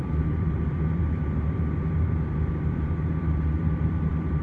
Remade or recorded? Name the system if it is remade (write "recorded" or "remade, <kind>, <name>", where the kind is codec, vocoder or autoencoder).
remade, vocoder, BigVGAN v2